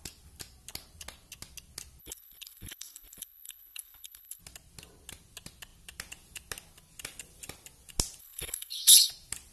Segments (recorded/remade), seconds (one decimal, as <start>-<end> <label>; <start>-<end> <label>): 0.0-2.0 recorded; 2.0-4.4 remade; 4.4-8.2 recorded; 8.2-9.1 remade; 9.1-9.5 recorded